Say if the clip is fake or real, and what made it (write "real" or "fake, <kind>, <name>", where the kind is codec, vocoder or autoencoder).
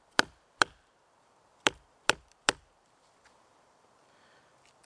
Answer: fake, vocoder, BigVGAN v2